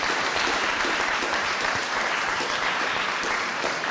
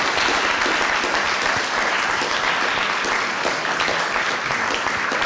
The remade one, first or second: first